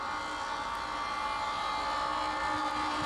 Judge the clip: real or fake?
real